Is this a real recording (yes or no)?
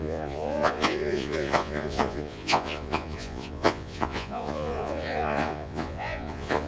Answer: no